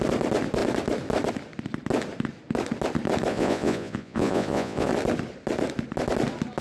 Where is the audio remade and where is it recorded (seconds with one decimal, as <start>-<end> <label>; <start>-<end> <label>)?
0.0-3.3 recorded; 3.3-4.9 remade; 4.9-6.6 recorded